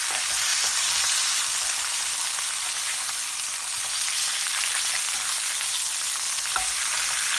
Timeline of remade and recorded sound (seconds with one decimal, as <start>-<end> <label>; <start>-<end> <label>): 0.0-7.4 recorded